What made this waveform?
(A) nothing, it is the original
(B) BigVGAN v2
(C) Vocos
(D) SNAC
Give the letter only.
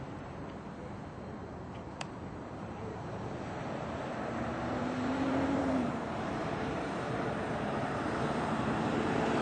B